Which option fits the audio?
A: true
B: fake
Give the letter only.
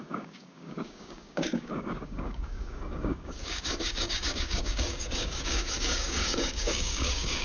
B